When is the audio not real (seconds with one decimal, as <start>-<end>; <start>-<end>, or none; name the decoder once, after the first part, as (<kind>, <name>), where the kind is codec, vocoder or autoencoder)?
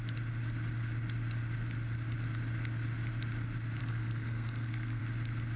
3.8-5.0 (codec, SNAC)